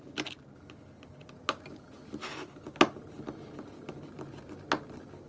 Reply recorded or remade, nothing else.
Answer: recorded